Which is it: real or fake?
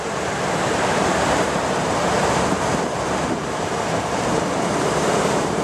fake